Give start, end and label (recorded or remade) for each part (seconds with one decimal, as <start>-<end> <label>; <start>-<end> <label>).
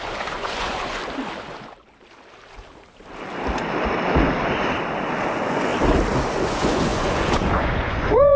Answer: 0.0-1.0 remade; 1.0-5.3 recorded; 5.3-5.7 remade; 5.7-6.4 recorded; 6.4-8.4 remade